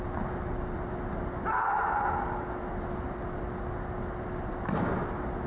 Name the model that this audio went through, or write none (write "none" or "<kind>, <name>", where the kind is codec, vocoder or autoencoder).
none